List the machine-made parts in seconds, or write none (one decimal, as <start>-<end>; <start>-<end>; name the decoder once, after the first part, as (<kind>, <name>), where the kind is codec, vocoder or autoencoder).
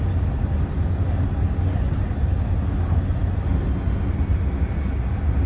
none